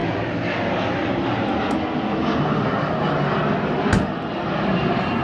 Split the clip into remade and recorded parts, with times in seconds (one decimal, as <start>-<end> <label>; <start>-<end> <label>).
0.0-5.2 recorded